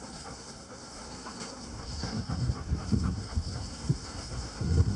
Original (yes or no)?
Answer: no